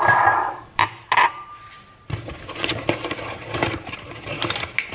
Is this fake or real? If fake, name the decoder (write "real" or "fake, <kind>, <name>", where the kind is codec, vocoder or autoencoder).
fake, vocoder, BigVGAN v2